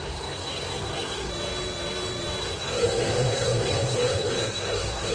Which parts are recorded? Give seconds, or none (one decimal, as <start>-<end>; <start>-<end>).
1.3-2.4